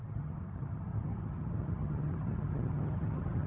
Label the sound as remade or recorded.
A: remade